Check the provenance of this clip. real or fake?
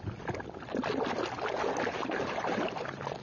real